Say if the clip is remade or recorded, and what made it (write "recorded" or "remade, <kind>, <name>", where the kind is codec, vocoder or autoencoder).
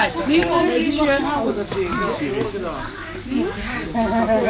remade, codec, DAC